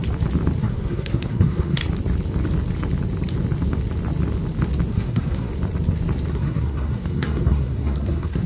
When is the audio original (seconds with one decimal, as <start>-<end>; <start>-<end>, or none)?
0.0-0.6; 1.8-4.9; 5.5-6.3